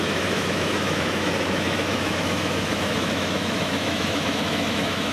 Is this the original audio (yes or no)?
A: no